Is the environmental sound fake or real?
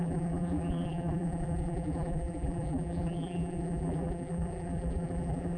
fake